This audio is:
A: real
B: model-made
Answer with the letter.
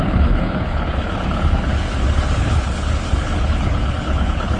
B